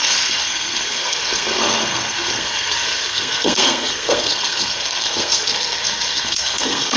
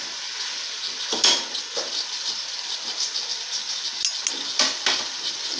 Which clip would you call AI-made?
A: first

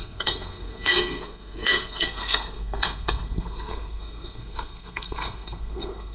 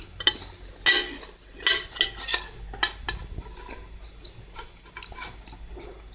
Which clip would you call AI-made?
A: first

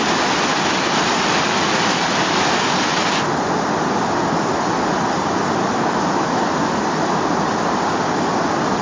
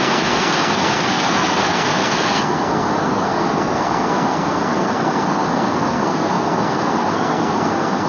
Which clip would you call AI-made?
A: second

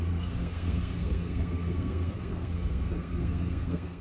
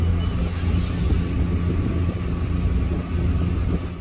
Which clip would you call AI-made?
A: first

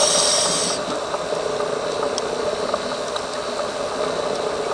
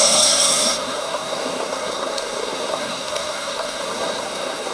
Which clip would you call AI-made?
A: second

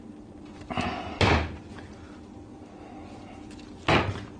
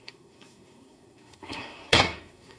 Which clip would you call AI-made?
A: second